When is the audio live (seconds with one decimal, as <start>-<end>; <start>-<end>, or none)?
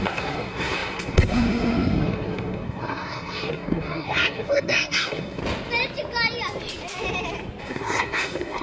5.4-7.6